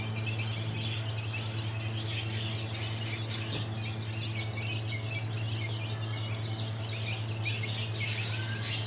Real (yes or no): yes